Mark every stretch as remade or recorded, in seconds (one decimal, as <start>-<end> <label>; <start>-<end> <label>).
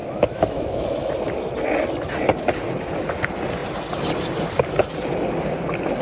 0.0-1.1 remade; 1.1-6.0 recorded